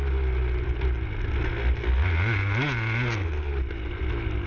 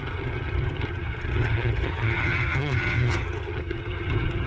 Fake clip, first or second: second